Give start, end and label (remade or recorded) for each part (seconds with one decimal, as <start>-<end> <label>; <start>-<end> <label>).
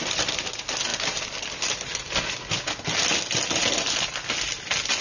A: 0.0-5.0 recorded